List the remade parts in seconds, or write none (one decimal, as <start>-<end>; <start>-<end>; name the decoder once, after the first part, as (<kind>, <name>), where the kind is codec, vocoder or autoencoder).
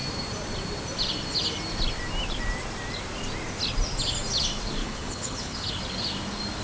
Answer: 4.8-5.7 (codec, HILCodec)